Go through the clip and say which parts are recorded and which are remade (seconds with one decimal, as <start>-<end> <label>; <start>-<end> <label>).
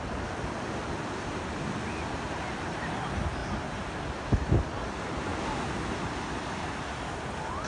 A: 0.0-7.7 recorded